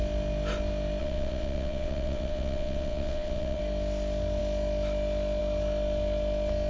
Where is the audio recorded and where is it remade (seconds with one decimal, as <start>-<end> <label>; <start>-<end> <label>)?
0.0-1.0 recorded; 1.0-3.6 remade; 3.6-6.7 recorded